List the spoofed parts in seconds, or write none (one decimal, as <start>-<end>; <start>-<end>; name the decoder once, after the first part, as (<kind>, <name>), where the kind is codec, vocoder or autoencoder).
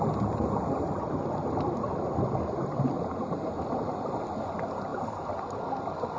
none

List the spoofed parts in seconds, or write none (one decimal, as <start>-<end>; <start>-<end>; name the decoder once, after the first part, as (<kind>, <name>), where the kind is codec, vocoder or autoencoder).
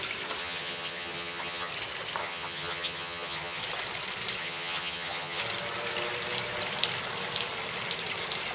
0.4-1.7 (vocoder, HiFi-GAN); 2.2-3.6; 4.4-5.4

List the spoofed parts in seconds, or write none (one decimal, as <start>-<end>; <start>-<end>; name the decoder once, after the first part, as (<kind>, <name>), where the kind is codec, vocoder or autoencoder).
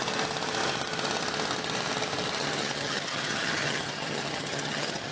2.4-5.1 (vocoder, HiFi-GAN)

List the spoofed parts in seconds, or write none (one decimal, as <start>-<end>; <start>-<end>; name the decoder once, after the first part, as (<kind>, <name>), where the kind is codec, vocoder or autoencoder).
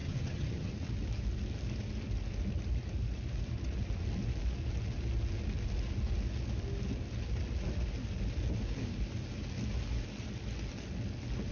0.0-0.7 (vocoder, HiFi-GAN)